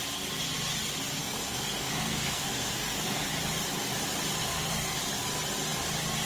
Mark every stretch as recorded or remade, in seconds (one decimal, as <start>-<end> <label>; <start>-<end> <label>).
0.0-1.2 recorded; 1.2-3.3 remade; 3.3-4.4 recorded; 4.4-5.0 remade; 5.0-6.3 recorded